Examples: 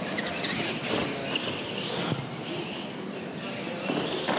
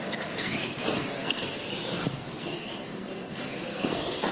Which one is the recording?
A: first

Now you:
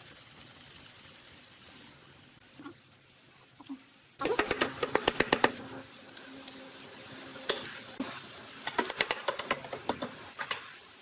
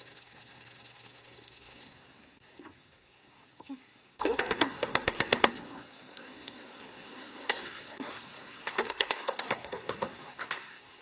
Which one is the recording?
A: first